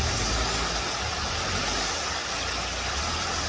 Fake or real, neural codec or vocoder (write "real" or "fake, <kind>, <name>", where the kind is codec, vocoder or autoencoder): real